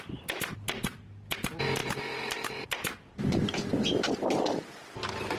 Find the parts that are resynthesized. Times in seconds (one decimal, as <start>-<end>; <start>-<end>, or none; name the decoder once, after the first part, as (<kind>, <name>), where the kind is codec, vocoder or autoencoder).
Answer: 1.8-2.7 (vocoder, BigVGAN v2)